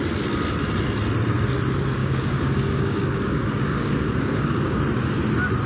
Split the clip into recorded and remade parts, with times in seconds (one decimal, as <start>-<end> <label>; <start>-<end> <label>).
0.0-2.0 recorded; 2.0-4.8 remade; 4.8-5.7 recorded